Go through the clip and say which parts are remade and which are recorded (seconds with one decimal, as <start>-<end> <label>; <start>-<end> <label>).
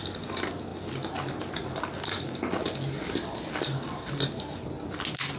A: 0.0-5.4 recorded